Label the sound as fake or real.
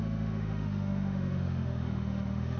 fake